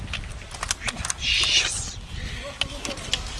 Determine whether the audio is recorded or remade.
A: recorded